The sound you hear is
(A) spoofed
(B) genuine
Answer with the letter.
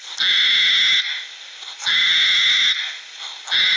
B